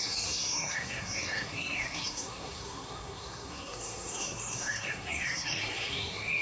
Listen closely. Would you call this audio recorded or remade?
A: remade